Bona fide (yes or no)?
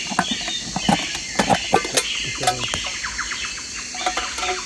yes